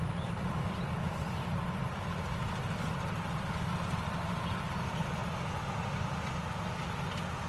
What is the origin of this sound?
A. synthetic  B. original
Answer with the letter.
B